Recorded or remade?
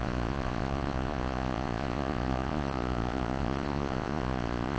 remade